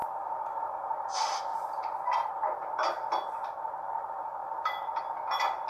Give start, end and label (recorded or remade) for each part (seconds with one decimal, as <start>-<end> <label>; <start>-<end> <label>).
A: 0.0-0.7 remade; 0.7-1.5 recorded; 1.5-2.3 remade; 2.3-4.4 recorded; 4.4-5.0 remade; 5.0-5.7 recorded